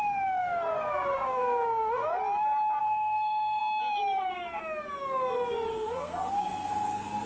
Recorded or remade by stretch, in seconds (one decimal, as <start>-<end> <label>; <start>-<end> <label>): 0.0-0.4 recorded; 0.4-2.2 remade; 2.2-2.8 recorded; 2.8-3.6 remade; 3.6-5.7 recorded; 5.7-6.7 remade; 6.7-7.3 recorded